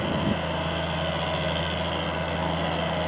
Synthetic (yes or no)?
no